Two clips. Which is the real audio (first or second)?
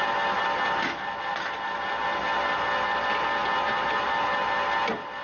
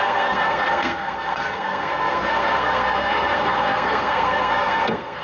first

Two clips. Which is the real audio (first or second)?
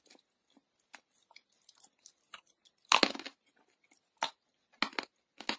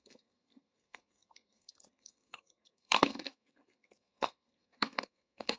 first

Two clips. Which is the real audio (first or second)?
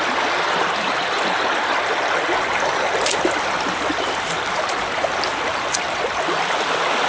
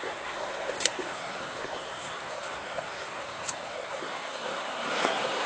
first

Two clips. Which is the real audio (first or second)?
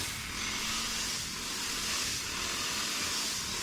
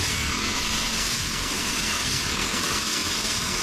first